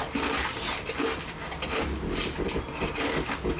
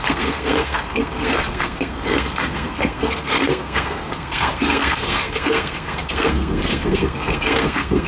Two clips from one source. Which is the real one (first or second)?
first